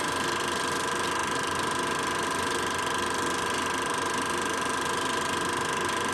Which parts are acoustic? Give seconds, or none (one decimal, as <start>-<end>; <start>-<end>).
0.0-6.1